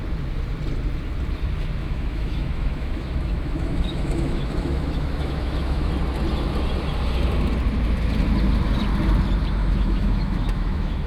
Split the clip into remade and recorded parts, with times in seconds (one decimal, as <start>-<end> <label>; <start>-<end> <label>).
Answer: 0.0-1.8 recorded; 1.8-5.9 remade; 5.9-9.6 recorded; 9.6-11.1 remade